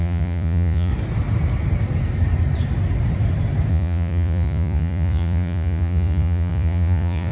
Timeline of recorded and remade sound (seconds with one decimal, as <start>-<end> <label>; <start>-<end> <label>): 0.0-0.9 remade; 0.9-3.7 recorded; 3.7-7.3 remade